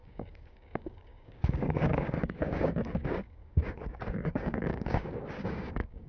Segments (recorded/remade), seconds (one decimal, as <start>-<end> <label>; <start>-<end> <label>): 0.0-6.1 remade